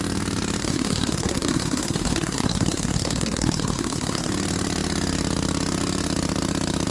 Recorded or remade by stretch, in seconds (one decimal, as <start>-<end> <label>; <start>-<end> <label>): 0.0-0.6 recorded; 0.6-4.3 remade; 4.3-6.9 recorded

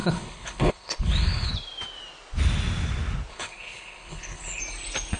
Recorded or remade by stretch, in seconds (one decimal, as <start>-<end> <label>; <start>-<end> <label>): 0.0-1.5 remade; 1.5-3.3 recorded; 3.3-4.6 remade; 4.6-5.2 recorded